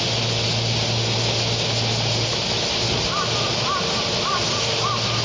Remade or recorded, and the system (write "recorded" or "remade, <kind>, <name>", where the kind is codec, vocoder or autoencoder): recorded